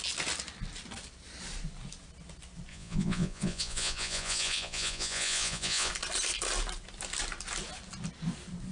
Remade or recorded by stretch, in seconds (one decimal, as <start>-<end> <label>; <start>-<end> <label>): 0.0-2.7 recorded; 2.7-5.9 remade; 5.9-8.7 recorded